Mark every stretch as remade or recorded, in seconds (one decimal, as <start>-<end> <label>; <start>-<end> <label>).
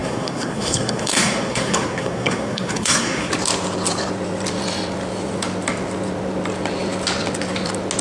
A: 0.0-3.3 remade; 3.3-8.0 recorded